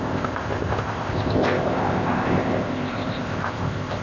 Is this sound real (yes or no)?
no